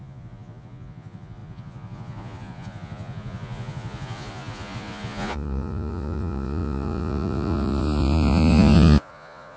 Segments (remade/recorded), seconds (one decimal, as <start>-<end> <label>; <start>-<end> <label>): 0.0-9.6 remade